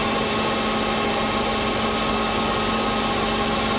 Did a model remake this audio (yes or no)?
no